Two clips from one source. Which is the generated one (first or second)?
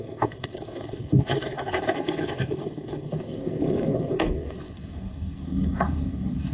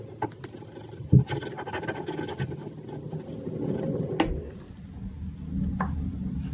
first